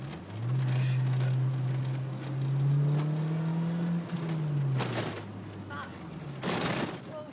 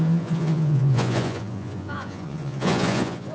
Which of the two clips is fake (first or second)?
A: second